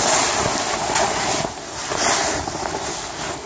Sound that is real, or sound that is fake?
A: real